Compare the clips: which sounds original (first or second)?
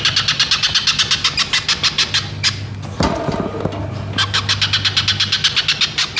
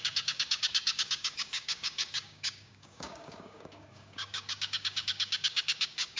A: first